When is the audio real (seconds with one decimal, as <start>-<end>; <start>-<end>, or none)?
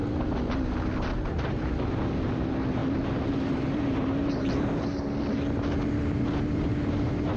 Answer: 0.0-2.8; 4.8-7.4